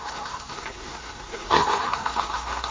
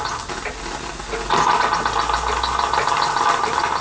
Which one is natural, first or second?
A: second